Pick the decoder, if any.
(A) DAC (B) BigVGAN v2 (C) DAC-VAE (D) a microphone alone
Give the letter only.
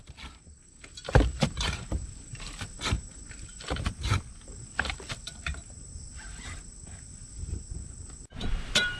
B